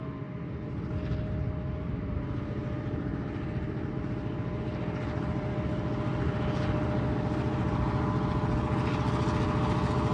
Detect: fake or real real